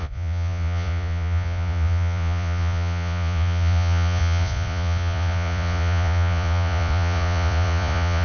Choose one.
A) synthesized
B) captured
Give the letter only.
A